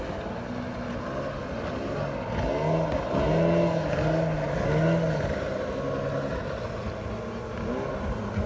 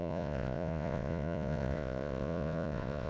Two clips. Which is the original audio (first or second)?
first